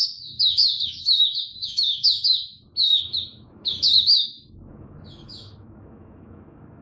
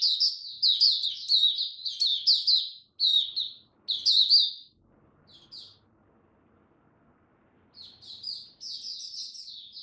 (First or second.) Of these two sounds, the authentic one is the second